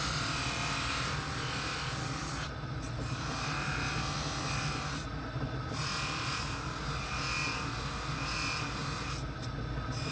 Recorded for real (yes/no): yes